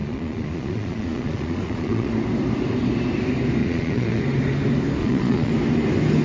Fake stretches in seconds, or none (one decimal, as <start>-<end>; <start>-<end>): 0.0-2.1; 3.6-4.2; 5.0-5.5